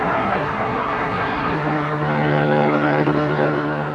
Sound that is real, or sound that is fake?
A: fake